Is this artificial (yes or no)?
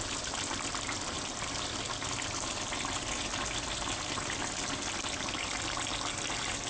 no